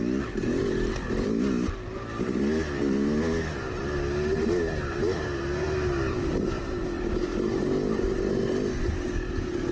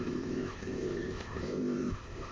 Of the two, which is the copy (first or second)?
second